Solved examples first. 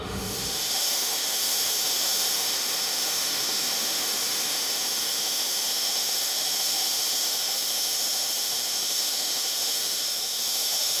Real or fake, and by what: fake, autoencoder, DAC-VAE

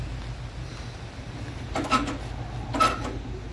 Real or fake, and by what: real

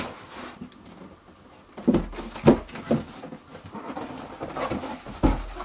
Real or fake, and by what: real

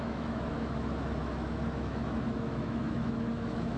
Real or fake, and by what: fake, autoencoder, DAC-VAE